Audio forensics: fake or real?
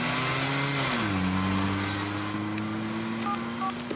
real